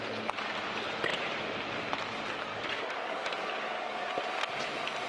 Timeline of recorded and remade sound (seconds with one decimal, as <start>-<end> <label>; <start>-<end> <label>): 0.0-2.5 recorded; 2.5-4.1 remade; 4.1-5.1 recorded